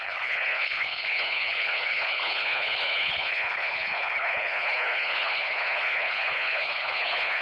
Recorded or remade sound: remade